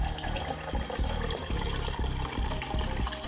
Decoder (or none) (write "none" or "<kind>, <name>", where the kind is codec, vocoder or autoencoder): none